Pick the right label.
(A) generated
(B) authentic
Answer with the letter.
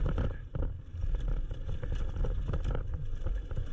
B